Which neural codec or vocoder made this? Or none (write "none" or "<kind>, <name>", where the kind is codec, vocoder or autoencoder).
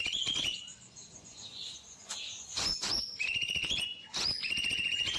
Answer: vocoder, Vocos